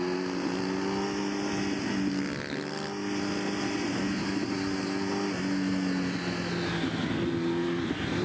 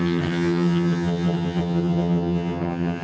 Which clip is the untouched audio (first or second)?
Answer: first